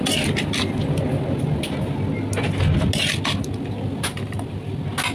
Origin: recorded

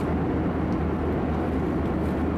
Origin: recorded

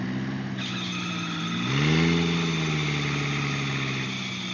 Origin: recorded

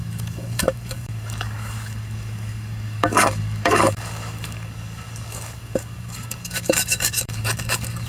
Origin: remade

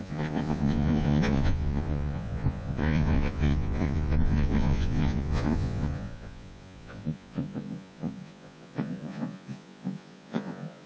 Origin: remade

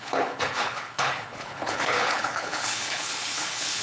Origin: remade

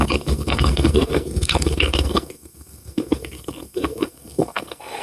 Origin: remade